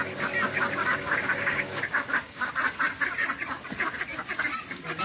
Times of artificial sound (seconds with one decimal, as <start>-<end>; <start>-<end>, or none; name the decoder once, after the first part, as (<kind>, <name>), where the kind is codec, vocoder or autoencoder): 0.8-2.5 (codec, DAC)